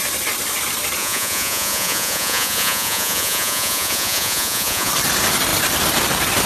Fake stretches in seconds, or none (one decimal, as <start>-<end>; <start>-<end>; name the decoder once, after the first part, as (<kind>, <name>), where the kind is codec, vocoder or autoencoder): 1.0-4.9 (vocoder, Vocos)